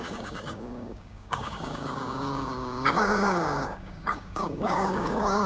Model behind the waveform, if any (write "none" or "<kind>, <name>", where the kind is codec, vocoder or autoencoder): codec, DAC